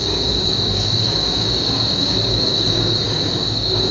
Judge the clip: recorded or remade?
remade